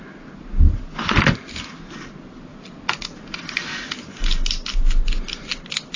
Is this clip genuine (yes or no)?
yes